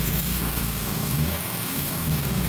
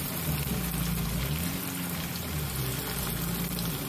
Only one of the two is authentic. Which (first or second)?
second